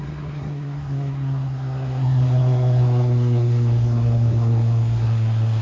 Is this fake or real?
fake